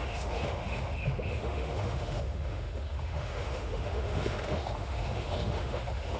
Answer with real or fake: fake